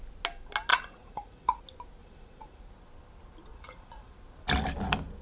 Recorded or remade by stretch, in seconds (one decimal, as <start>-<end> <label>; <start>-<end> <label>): 0.0-0.7 recorded; 0.7-1.6 remade; 1.6-2.0 recorded; 2.0-2.6 remade; 2.6-3.5 recorded; 3.5-4.1 remade; 4.1-5.2 recorded